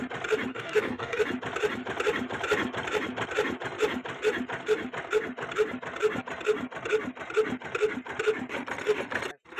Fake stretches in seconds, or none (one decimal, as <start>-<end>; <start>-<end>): 0.5-1.2